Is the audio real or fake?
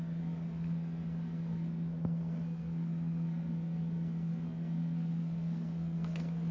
fake